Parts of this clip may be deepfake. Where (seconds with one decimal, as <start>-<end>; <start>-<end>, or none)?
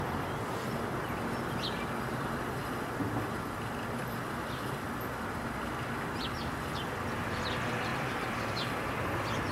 none